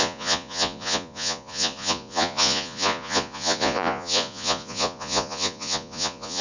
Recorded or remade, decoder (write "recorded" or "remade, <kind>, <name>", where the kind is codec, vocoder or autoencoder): remade, vocoder, Vocos